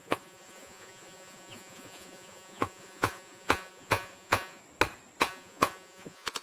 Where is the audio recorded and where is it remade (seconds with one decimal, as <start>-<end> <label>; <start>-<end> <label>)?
0.0-4.6 remade; 4.6-5.2 recorded; 5.2-6.4 remade